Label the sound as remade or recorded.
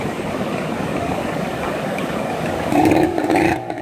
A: remade